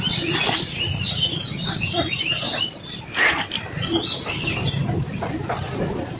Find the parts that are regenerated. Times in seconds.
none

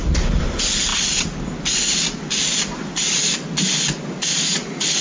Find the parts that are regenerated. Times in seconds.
none

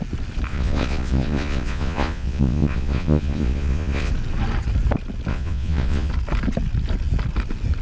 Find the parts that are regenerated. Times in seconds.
0.5-4.1 (vocoder, Vocos); 5.3-6.1

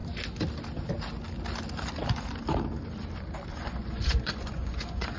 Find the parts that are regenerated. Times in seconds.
3.5-5.2 (vocoder, Vocos)

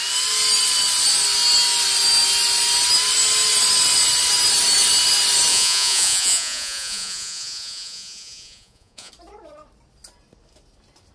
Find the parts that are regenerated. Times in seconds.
5.5-9.1 (vocoder, Vocos)

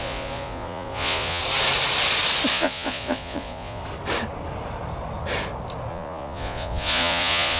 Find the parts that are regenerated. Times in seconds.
0.0-1.4 (vocoder, Vocos); 2.5-3.8; 5.9-7.6